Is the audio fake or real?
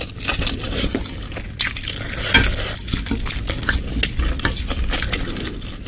real